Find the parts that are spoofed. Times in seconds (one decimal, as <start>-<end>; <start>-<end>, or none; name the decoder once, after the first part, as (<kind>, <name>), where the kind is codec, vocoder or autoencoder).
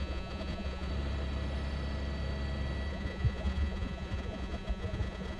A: 0.0-0.9 (vocoder, Vocos); 2.9-5.4